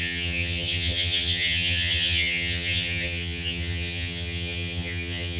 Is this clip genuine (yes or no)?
no